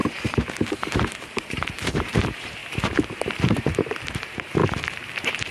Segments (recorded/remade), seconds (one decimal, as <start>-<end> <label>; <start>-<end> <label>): 0.0-4.6 remade; 4.6-5.5 recorded